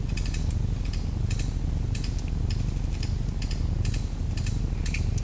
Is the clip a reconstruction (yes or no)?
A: no